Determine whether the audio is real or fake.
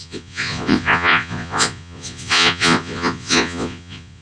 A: fake